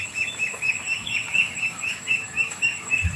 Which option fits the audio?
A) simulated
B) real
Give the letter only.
A